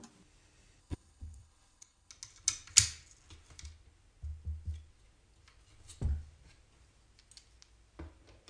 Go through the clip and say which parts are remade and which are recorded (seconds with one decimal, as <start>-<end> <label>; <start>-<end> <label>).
0.0-0.8 recorded; 0.8-2.1 remade; 2.1-8.5 recorded